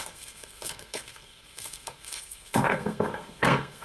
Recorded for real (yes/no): no